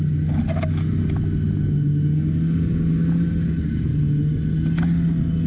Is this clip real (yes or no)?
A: yes